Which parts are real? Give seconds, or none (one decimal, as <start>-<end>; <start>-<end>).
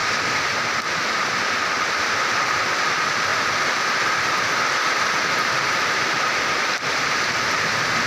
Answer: 0.0-1.8